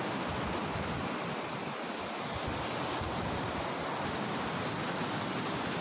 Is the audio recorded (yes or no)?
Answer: yes